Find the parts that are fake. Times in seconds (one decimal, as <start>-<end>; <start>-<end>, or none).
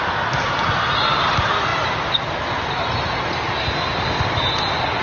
none